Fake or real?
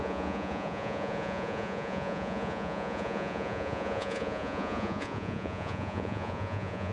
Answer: fake